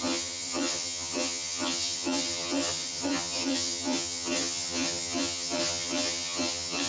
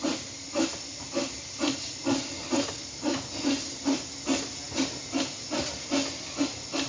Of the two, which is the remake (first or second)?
first